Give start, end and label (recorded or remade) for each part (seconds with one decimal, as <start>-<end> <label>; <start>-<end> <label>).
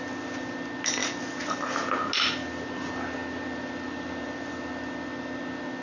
0.0-3.2 recorded; 3.2-4.5 remade; 4.5-5.8 recorded